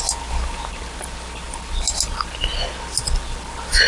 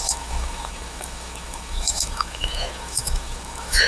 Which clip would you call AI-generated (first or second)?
second